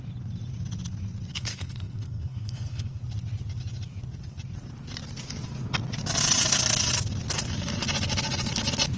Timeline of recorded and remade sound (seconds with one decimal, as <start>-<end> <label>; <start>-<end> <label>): 0.0-1.3 recorded; 1.3-3.0 remade; 3.0-9.0 recorded